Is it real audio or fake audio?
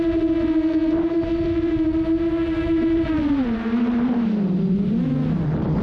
real